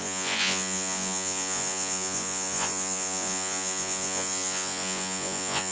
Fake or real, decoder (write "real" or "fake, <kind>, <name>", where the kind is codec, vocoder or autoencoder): fake, vocoder, Vocos